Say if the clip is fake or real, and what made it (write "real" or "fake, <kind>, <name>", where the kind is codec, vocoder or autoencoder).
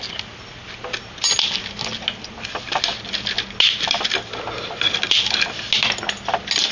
real